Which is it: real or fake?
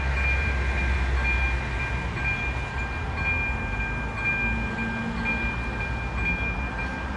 real